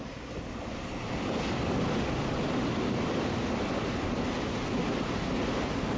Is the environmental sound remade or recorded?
recorded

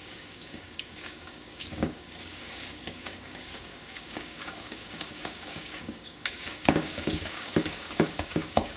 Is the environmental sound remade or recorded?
remade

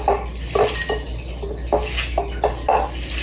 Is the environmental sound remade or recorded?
recorded